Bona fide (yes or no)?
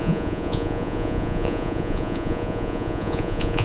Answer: no